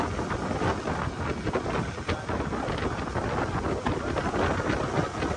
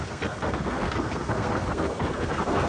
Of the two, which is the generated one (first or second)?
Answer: second